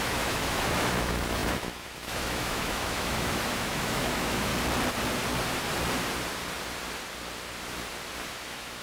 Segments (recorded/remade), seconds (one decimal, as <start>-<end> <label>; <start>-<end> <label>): 0.0-4.5 remade; 4.5-8.3 recorded; 8.3-8.8 remade